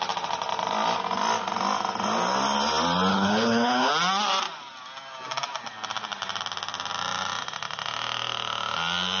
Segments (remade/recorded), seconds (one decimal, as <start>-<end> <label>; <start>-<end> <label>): 0.0-3.1 recorded; 3.1-3.9 remade; 3.9-9.2 recorded